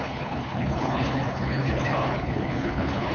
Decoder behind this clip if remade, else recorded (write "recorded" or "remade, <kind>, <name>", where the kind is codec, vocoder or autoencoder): remade, codec, HILCodec